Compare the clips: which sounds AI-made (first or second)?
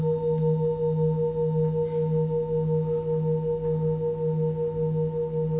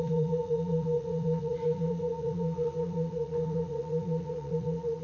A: second